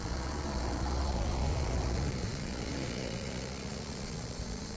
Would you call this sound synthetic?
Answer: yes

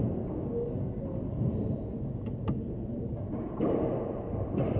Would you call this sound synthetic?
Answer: no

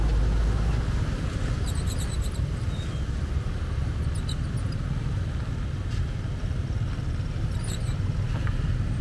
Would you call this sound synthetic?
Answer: no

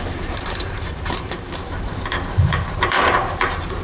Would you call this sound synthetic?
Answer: yes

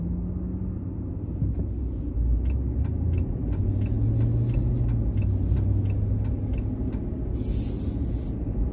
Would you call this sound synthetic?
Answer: no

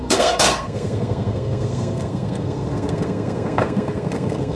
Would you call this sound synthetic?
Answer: yes